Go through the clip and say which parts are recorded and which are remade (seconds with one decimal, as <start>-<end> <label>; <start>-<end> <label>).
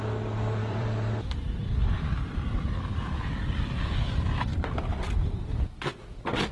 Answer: 0.0-0.6 recorded; 0.6-3.8 remade; 3.8-4.9 recorded; 4.9-5.5 remade; 5.5-6.5 recorded